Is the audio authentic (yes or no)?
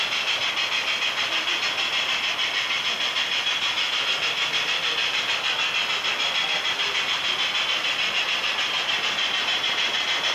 yes